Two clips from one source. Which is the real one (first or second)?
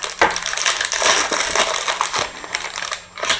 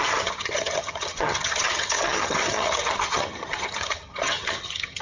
first